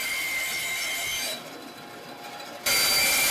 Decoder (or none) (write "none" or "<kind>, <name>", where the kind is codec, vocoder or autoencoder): none